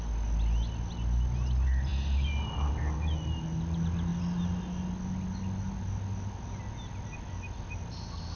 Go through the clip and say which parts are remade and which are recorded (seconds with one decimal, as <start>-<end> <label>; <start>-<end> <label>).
0.0-8.4 recorded